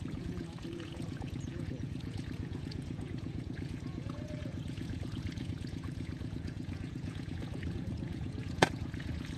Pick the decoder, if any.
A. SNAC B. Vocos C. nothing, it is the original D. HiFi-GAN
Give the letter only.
B